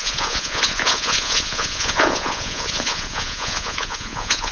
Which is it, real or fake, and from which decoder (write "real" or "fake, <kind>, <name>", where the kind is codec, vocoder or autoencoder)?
fake, vocoder, Vocos